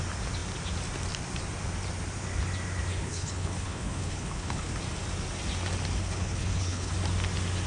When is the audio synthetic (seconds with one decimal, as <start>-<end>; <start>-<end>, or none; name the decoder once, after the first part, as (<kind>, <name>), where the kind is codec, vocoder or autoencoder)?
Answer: 2.9-4.7 (codec, HILCodec); 6.0-6.9